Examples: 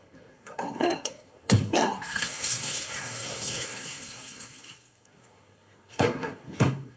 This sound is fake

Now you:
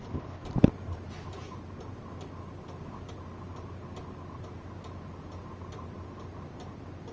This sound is real